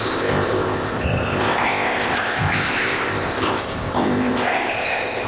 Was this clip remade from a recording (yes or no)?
yes